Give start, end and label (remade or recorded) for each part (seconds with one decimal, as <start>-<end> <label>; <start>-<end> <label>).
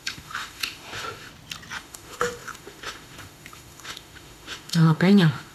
0.0-1.3 remade; 1.3-1.8 recorded; 1.8-5.5 remade